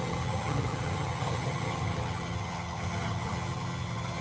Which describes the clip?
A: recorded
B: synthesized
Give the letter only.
B